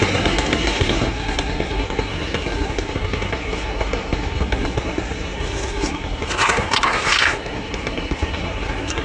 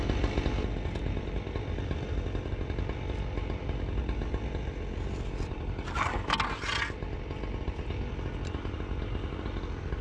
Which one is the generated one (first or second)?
first